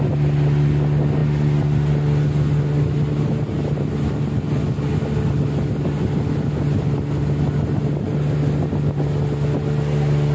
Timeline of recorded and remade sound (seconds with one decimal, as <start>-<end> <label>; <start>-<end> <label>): 0.0-10.3 recorded